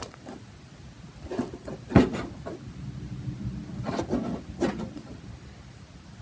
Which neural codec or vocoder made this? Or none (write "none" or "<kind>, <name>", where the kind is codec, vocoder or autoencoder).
none